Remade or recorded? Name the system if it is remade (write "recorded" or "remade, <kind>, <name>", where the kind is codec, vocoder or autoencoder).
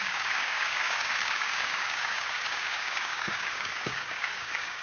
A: remade, codec, DAC